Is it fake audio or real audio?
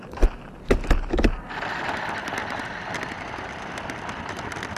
real